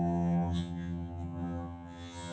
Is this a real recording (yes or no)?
no